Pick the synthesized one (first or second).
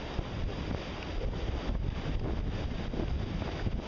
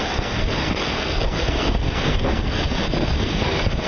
second